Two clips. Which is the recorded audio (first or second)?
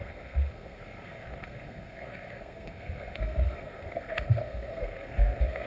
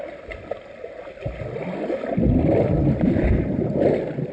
second